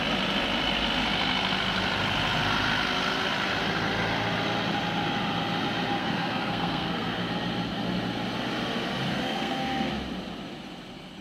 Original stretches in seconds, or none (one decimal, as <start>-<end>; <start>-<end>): 0.0-6.0; 7.3-9.1; 9.9-11.2